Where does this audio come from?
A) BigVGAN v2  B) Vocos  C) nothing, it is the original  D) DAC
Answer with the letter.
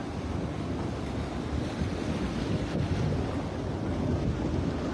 C